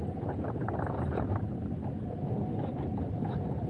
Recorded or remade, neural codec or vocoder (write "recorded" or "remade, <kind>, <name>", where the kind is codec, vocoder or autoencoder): recorded